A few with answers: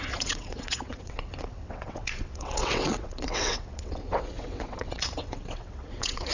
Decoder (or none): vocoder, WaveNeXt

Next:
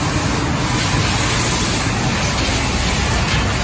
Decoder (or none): none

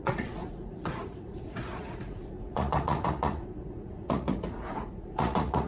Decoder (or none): vocoder, Vocos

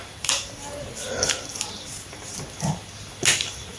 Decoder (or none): none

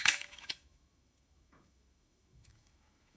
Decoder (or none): autoencoder, DAC-VAE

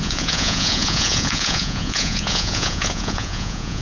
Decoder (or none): vocoder, Vocos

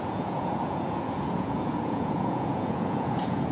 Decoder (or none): vocoder, Vocos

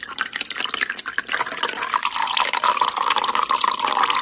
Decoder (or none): none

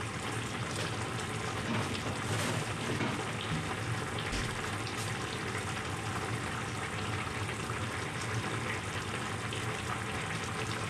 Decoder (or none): none